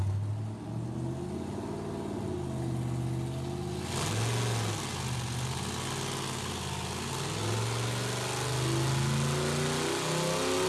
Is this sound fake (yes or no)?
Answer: no